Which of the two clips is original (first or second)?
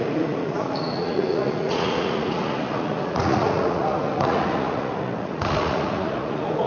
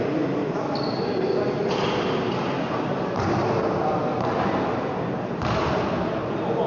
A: second